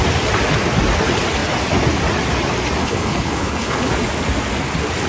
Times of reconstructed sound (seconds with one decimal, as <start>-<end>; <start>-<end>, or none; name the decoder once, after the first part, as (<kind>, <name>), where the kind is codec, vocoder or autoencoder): 2.8-3.9 (codec, HILCodec)